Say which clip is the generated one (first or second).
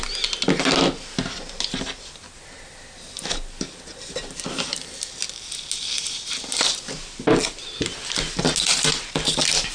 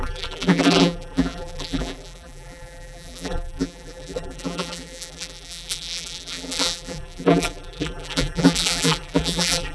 second